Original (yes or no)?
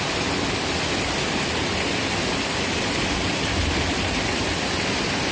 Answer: yes